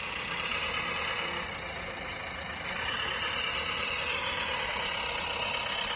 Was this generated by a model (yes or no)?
no